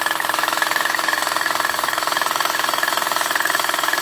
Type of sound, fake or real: fake